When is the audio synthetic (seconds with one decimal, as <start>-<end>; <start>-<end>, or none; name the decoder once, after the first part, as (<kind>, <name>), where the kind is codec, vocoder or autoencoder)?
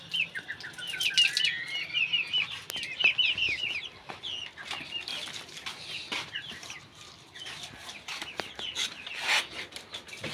none